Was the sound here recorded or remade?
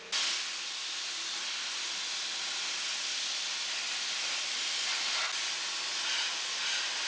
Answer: recorded